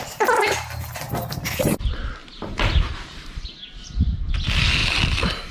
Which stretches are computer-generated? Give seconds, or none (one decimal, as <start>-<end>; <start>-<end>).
2.2-4.3; 4.8-5.5